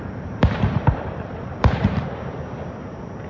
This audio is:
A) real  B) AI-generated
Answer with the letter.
B